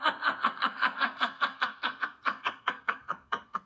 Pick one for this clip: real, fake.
fake